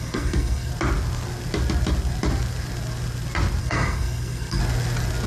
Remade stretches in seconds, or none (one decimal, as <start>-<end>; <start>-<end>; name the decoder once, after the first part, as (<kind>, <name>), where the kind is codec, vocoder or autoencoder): 0.0-0.7 (codec, SNAC); 3.6-4.6